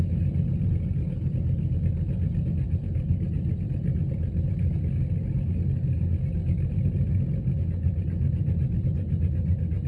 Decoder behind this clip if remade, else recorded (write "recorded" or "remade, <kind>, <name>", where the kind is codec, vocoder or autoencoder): recorded